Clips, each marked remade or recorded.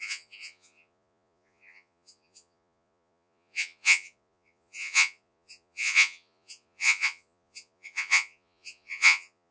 remade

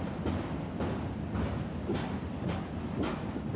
recorded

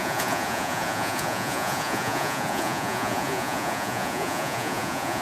remade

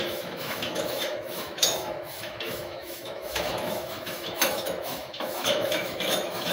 remade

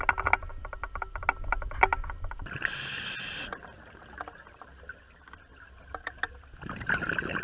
recorded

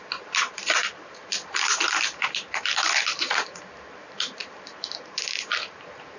remade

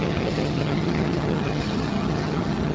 remade